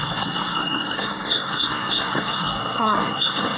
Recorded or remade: remade